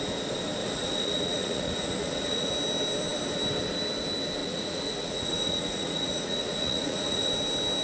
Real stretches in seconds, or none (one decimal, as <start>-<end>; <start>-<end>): 0.0-0.6; 2.5-4.4; 7.3-7.8